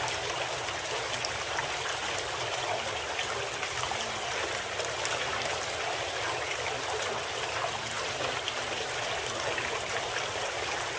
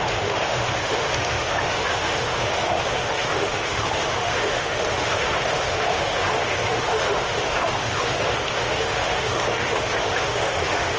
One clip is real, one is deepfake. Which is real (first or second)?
first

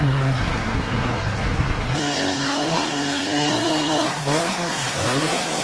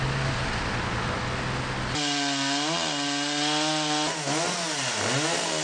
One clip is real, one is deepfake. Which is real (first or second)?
second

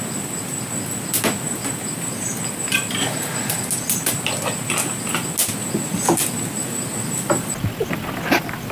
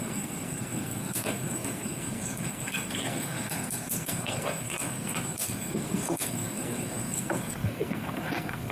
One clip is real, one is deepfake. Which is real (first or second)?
first